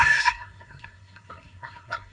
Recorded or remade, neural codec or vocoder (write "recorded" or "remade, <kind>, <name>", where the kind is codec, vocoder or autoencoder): remade, codec, SNAC